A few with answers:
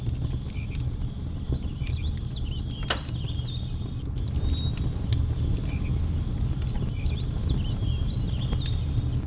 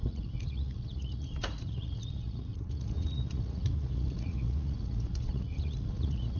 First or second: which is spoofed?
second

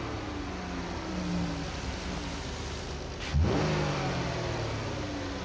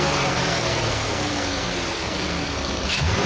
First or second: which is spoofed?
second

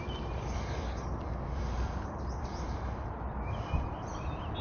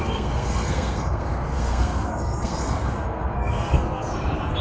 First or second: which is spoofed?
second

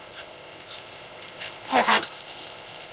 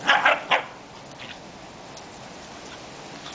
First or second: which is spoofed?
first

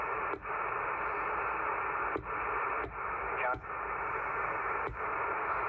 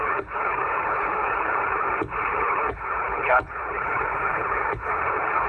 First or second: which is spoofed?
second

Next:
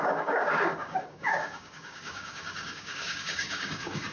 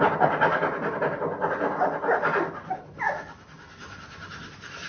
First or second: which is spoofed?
first